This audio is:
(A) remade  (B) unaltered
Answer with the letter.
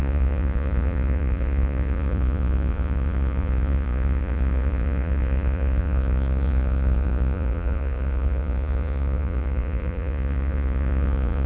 A